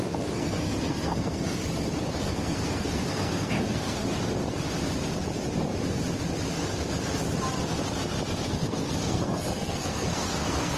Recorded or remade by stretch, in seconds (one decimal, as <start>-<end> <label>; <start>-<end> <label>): 0.0-1.6 remade; 1.6-2.2 recorded; 2.2-4.0 remade; 4.0-8.5 recorded; 8.5-10.8 remade